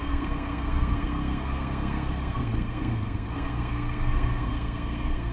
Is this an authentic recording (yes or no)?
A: no